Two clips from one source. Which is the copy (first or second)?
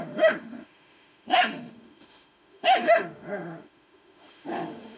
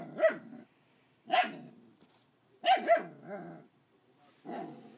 first